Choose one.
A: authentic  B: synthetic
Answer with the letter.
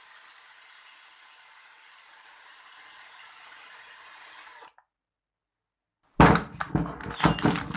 A